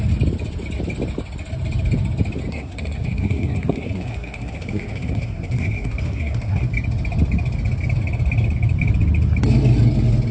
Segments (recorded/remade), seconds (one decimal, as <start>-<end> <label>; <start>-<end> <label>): 0.0-2.5 recorded; 2.5-6.7 remade; 6.7-10.3 recorded